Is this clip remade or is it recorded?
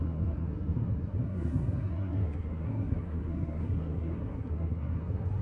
remade